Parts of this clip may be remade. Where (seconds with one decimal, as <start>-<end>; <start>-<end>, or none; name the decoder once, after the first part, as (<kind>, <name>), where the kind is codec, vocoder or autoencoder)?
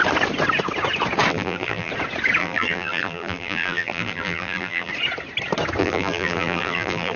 1.3-1.9 (vocoder, BigVGAN v2); 2.4-4.9; 5.8-7.2